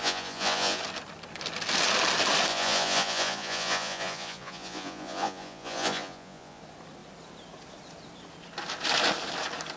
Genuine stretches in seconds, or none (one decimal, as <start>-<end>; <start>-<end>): 0.8-2.5; 6.6-9.8